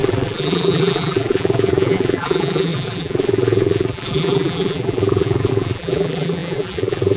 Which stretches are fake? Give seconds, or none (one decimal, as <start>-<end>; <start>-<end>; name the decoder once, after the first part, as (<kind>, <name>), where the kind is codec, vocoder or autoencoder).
0.0-7.2 (vocoder, BigVGAN v2)